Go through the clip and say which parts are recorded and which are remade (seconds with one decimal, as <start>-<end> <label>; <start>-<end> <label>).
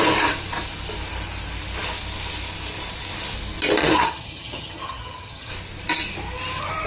0.0-3.8 recorded; 3.8-5.5 remade; 5.5-6.9 recorded